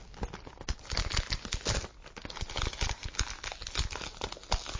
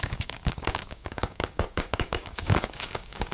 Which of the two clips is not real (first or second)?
second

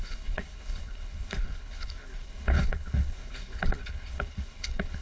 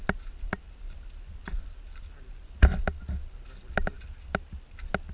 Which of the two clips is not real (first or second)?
first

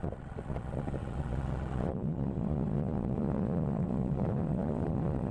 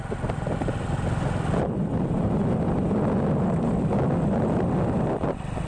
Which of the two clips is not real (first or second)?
first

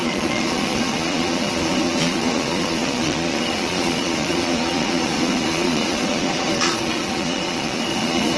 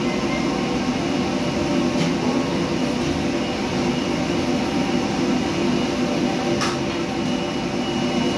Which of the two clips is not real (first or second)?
first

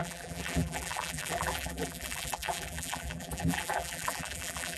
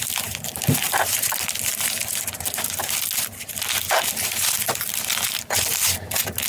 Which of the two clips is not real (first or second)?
first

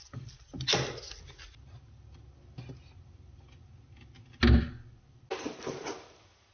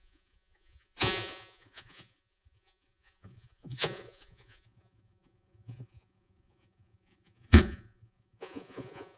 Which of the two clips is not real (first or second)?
second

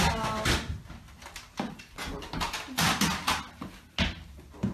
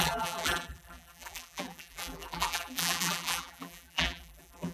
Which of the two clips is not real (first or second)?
second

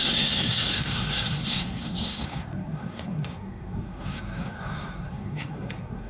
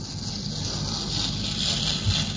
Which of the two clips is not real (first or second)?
first